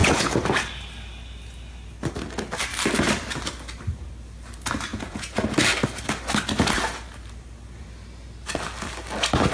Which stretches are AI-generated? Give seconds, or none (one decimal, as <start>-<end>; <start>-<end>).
0.0-0.6; 4.9-5.4